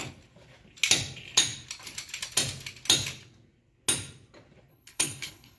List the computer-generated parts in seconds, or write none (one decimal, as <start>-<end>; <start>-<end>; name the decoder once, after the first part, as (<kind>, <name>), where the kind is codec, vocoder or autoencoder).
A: 4.7-5.6 (codec, HILCodec)